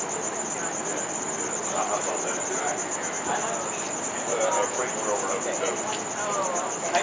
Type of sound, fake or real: real